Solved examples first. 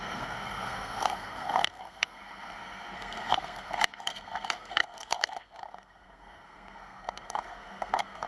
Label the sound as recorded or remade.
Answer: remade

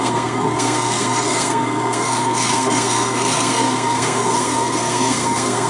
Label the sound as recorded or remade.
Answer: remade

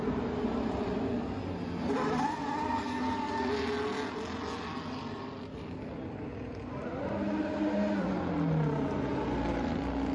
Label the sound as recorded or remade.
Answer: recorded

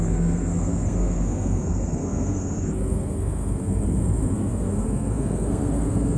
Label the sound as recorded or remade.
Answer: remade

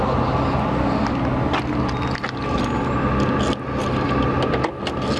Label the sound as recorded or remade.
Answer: recorded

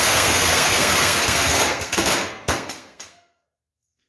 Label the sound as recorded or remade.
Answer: remade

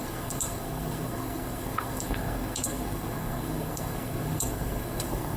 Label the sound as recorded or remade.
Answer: remade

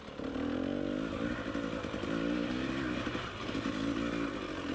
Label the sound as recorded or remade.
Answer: recorded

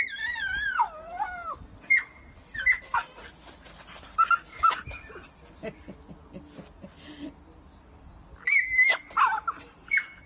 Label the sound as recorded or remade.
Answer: recorded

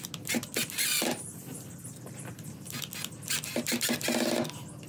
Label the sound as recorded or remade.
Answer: recorded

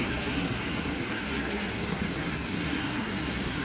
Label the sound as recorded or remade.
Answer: remade